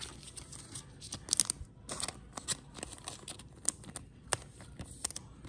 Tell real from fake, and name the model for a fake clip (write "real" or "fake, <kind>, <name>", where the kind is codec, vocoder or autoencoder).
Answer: real